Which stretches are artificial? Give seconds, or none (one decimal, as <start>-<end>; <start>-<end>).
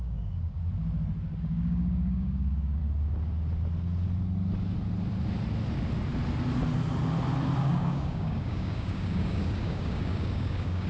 0.0-0.6; 1.4-2.8; 7.6-10.9